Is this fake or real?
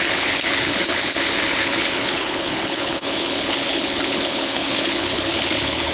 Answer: fake